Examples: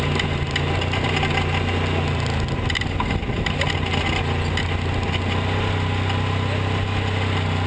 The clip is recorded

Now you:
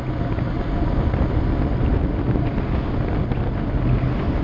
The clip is recorded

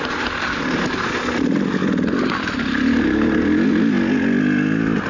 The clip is recorded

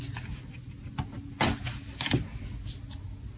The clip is recorded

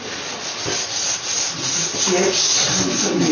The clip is recorded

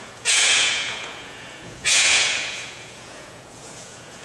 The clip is remade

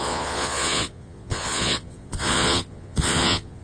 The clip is remade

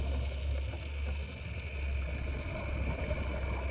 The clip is recorded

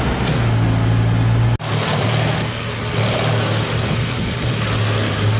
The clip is recorded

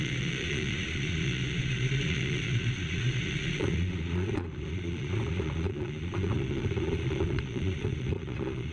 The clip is remade